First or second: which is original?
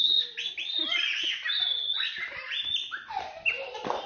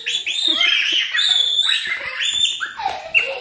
first